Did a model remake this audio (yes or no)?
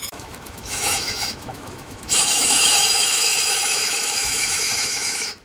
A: yes